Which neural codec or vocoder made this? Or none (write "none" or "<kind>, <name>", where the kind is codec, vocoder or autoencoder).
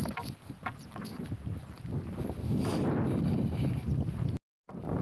none